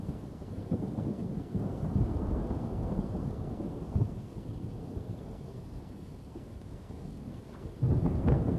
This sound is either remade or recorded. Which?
remade